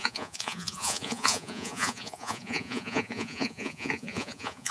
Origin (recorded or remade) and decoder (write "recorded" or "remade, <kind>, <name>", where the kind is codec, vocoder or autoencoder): remade, vocoder, Vocos